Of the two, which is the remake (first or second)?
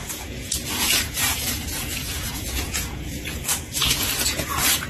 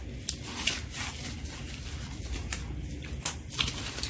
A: first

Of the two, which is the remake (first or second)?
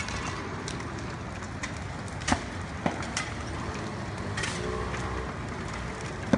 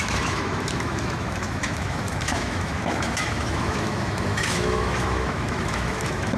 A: second